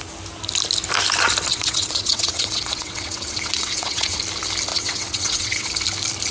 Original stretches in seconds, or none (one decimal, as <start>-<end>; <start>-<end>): 0.0-1.5; 4.2-4.7; 5.7-6.3